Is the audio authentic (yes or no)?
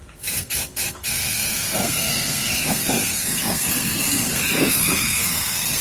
no